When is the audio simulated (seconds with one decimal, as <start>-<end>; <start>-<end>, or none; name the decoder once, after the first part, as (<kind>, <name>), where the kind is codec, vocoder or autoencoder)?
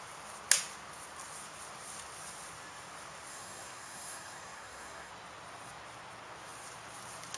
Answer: 3.3-5.1 (codec, SNAC)